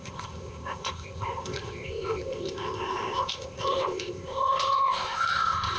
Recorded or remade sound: remade